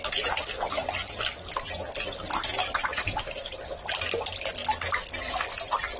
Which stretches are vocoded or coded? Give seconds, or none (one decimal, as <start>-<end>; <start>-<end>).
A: 1.0-3.6